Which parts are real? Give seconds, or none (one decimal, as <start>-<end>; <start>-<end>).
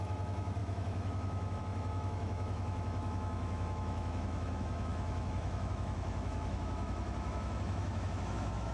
none